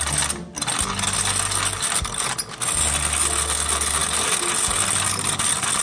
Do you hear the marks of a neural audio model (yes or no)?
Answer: no